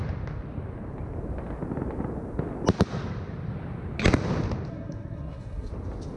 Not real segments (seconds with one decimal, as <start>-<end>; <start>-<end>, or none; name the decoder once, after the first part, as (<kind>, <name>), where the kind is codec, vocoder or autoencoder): 4.7-5.7 (codec, SNAC)